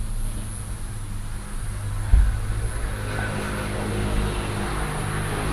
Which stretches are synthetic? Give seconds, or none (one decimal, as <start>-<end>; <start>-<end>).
none